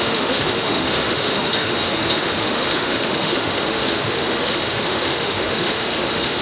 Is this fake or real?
fake